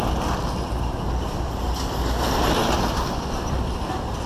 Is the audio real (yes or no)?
yes